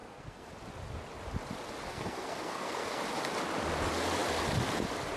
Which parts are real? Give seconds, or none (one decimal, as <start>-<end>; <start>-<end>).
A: 0.5-1.9; 3.0-5.2